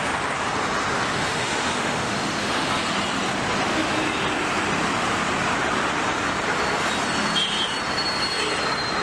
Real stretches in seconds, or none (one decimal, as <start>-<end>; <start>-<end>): 0.0-1.1; 2.7-9.0